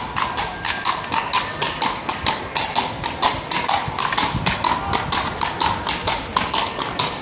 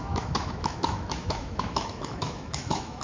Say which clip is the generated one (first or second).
second